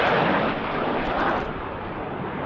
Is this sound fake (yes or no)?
no